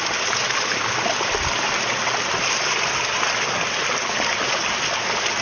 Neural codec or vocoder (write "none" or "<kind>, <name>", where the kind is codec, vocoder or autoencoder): none